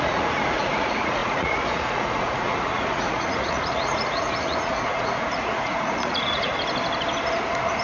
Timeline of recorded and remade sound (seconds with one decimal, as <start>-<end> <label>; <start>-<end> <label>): 0.0-6.5 remade; 6.5-7.3 recorded; 7.3-7.8 remade